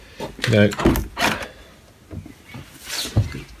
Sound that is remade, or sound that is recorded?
recorded